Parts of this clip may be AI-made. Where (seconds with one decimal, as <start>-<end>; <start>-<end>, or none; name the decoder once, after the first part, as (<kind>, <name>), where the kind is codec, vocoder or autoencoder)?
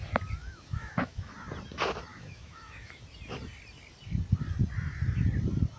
0.4-1.3 (autoencoder, DAC-VAE); 2.1-3.0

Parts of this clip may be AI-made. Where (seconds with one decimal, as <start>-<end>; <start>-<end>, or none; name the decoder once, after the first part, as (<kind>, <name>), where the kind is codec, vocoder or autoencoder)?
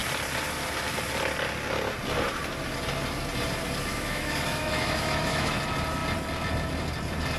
3.9-5.6 (autoencoder, DAC-VAE)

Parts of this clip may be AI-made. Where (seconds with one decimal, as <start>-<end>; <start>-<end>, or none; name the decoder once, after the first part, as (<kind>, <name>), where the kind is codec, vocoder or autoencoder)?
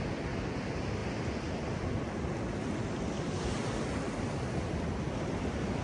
none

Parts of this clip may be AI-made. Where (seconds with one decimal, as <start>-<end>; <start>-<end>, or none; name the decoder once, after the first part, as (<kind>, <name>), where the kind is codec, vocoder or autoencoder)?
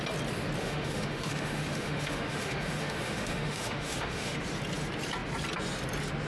0.6-4.4 (autoencoder, DAC-VAE)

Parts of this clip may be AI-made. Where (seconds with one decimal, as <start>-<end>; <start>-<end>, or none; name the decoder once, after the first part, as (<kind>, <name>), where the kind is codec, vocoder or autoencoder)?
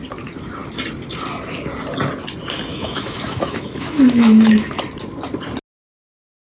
2.7-4.8 (autoencoder, DAC-VAE)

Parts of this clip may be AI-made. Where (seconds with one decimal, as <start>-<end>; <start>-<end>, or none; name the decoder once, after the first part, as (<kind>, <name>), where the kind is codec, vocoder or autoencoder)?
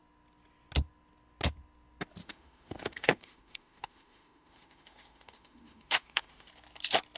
2.2-6.5 (autoencoder, DAC-VAE)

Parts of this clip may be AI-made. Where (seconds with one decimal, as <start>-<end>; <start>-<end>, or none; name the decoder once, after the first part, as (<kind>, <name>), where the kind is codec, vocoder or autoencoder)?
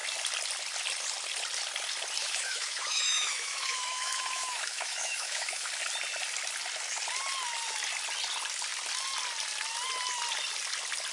2.2-5.7 (autoencoder, DAC-VAE)